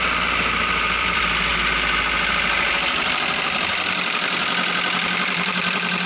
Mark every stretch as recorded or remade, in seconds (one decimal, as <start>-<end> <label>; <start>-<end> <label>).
0.0-1.5 remade; 1.5-5.2 recorded; 5.2-6.1 remade